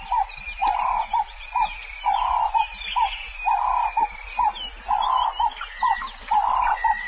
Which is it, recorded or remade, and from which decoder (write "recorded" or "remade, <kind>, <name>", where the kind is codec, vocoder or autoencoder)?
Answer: recorded